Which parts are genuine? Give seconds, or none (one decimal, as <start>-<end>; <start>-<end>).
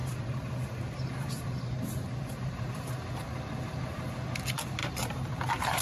3.1-4.8